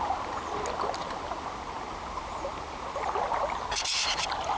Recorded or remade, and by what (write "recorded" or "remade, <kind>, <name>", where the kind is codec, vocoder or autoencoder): recorded